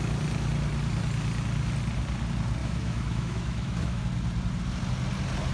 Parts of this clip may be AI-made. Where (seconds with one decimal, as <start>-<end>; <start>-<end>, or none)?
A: 2.6-4.0